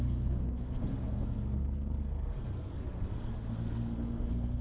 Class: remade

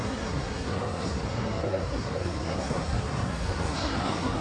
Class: remade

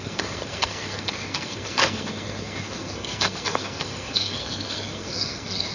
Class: remade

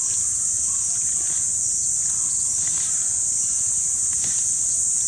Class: recorded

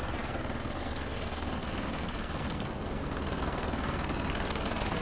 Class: remade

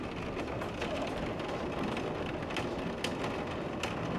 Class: recorded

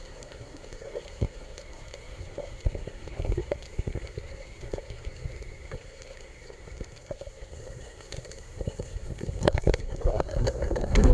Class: remade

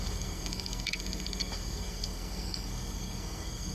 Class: remade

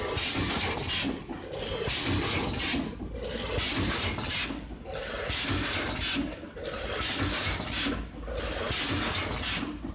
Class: recorded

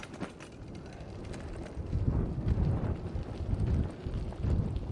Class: recorded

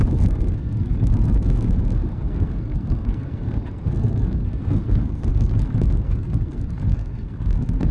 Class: remade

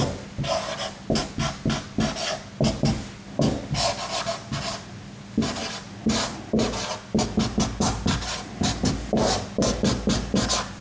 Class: recorded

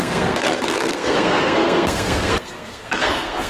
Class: remade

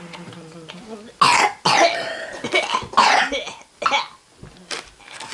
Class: recorded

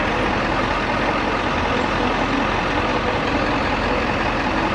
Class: recorded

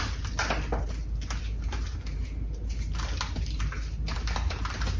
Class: recorded